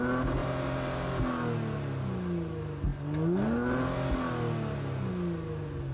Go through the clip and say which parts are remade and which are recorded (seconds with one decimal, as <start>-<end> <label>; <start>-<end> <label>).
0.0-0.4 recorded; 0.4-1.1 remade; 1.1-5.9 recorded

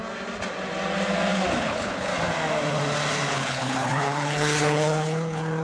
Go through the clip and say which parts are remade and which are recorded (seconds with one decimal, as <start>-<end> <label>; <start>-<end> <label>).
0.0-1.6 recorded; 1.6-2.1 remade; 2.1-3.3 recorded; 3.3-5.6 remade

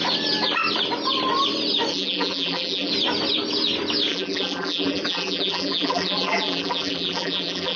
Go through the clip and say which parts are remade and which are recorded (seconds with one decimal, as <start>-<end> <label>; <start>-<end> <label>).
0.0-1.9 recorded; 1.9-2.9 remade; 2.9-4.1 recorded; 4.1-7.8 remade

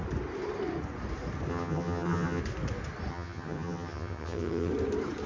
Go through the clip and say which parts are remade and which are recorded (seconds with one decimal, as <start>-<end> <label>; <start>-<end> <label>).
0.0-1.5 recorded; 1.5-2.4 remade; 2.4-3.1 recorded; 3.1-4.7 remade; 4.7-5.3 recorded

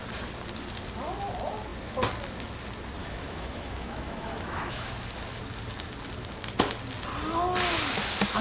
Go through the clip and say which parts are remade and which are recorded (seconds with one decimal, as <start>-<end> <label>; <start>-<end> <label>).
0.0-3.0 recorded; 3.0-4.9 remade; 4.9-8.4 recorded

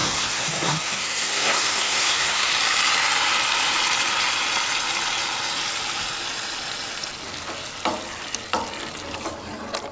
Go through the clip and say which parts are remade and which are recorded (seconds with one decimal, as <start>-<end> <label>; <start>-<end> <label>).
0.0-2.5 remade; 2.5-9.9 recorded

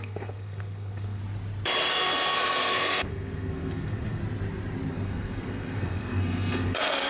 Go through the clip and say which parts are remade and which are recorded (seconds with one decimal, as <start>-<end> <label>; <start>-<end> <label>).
0.0-1.2 remade; 1.2-1.9 recorded; 1.9-4.2 remade; 4.2-4.9 recorded; 4.9-7.1 remade